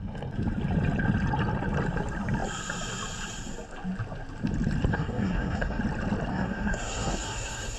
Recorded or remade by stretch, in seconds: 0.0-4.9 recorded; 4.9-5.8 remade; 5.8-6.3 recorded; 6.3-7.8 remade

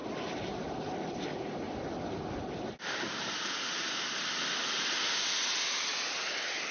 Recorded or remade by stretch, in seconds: 0.0-6.7 recorded

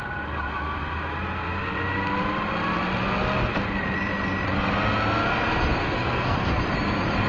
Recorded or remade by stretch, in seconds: 0.0-5.8 recorded; 5.8-6.6 remade; 6.6-7.3 recorded

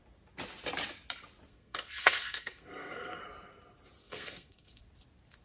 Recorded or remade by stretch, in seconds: 0.0-1.5 recorded; 1.5-3.2 remade; 3.2-4.0 recorded; 4.0-4.8 remade; 4.8-5.4 recorded

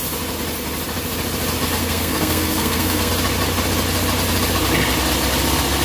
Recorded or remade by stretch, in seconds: 0.0-1.8 recorded; 1.8-3.1 remade; 3.1-5.8 recorded